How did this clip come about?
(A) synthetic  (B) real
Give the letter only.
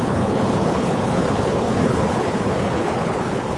A